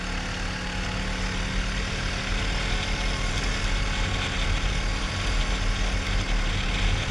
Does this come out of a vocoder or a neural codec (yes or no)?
no